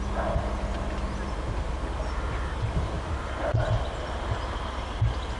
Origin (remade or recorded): recorded